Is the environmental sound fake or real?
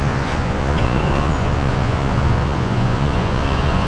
fake